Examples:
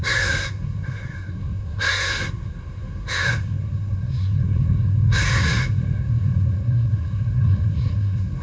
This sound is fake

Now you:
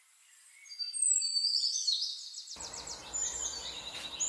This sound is real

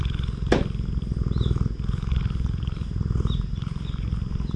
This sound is real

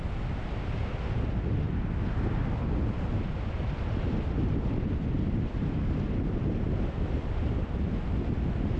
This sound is real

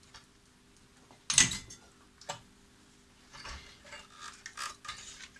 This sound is real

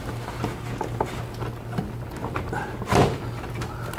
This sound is real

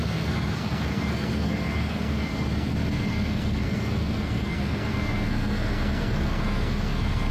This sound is fake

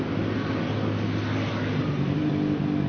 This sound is real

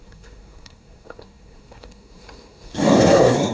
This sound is fake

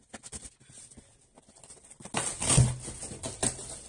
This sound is real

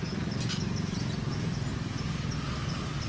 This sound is real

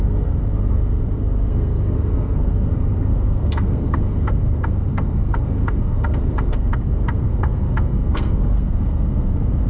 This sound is fake